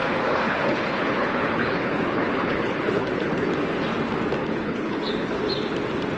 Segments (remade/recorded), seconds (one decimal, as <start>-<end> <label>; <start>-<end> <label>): 0.0-3.5 remade; 3.5-4.4 recorded; 4.4-5.4 remade; 5.4-6.2 recorded